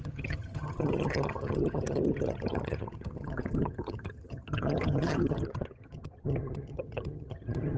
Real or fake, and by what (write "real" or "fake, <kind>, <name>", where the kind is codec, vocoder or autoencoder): fake, vocoder, HiFi-GAN